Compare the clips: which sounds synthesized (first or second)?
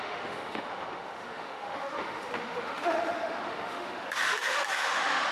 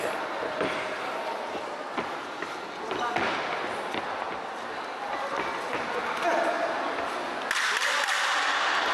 first